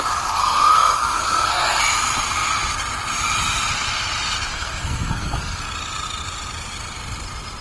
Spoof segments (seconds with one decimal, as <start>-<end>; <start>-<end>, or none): 0.4-1.8; 4.5-5.6